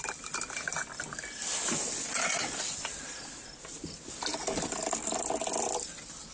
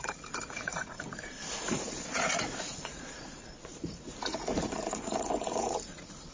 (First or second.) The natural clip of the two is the first